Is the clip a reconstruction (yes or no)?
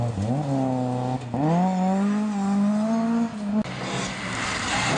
no